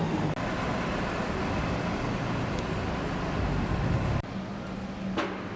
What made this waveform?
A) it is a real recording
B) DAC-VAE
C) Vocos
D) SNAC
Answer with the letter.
A